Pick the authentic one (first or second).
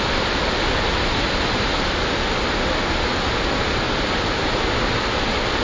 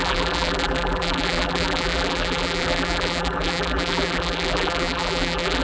first